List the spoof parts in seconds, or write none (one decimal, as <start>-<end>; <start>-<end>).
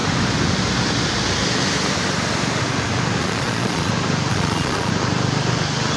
3.2-3.9; 4.3-4.9